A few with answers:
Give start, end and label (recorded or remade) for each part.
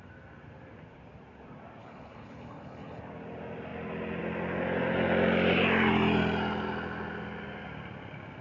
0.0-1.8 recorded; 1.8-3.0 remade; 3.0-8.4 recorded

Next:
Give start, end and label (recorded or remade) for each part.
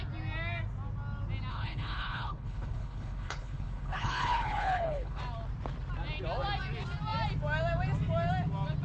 0.0-1.5 recorded; 1.5-5.2 remade; 5.2-8.8 recorded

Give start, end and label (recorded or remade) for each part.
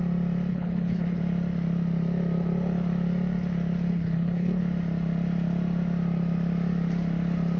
0.0-0.5 recorded; 0.5-1.2 remade; 1.2-3.9 recorded; 3.9-4.6 remade; 4.6-7.6 recorded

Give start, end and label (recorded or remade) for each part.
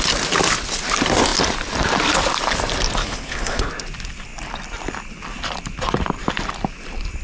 0.0-3.0 recorded; 3.0-3.7 remade; 3.7-7.2 recorded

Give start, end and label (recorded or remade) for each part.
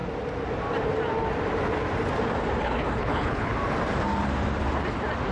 0.0-2.6 recorded; 2.6-3.5 remade; 3.5-5.3 recorded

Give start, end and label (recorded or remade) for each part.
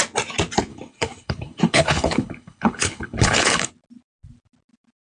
0.0-0.7 recorded; 0.7-3.7 remade; 3.7-5.0 recorded